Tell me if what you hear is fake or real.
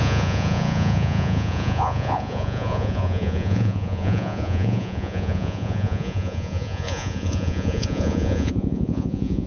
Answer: fake